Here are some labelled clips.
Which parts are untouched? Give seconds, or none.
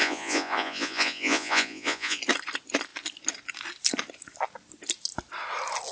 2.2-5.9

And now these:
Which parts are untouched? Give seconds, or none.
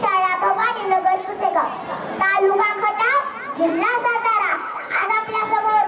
0.0-4.5; 5.1-5.9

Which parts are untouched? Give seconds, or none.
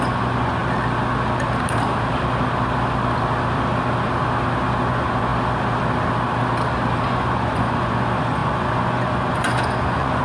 0.6-4.8; 5.3-7.0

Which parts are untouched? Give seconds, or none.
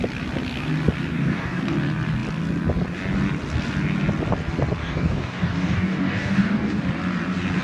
0.0-1.1; 1.6-4.8; 6.8-7.6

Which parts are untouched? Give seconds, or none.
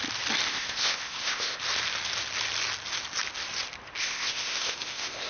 0.0-0.5; 1.6-4.0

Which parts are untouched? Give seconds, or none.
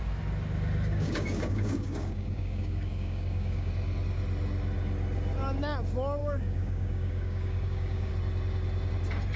0.0-0.9; 3.7-6.2; 8.1-9.4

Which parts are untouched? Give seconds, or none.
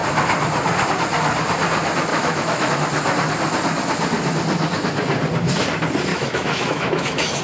0.0-2.1; 2.7-6.1